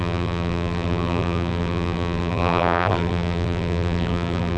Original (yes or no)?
no